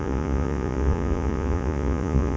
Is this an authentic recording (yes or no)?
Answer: no